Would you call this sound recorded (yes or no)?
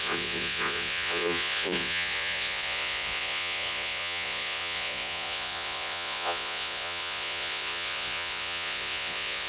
no